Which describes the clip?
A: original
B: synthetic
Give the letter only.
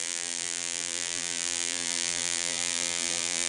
B